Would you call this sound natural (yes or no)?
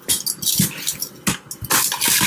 yes